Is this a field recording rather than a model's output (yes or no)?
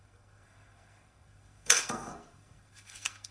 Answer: no